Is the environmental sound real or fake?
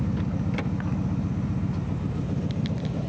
real